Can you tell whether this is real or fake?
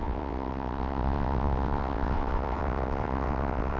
fake